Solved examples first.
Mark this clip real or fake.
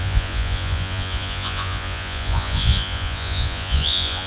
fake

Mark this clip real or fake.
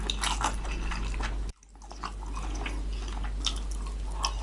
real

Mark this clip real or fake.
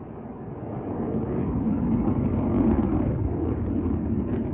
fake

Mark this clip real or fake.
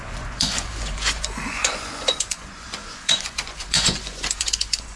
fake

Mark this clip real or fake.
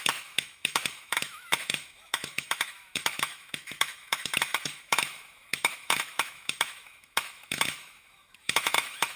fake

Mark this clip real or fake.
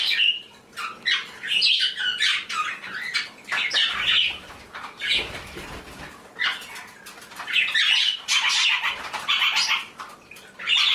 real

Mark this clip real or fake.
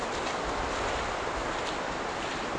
real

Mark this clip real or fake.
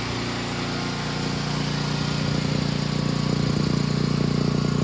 real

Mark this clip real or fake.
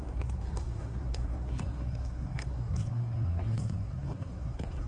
fake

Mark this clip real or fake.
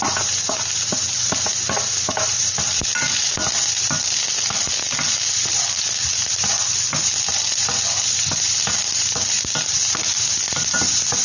real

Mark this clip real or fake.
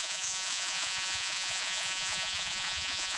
fake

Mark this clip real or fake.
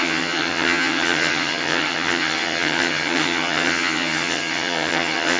fake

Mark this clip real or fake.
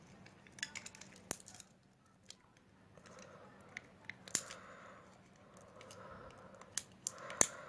real